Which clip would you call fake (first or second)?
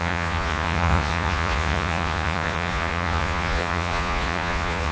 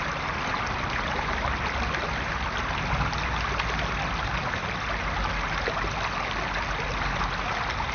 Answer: first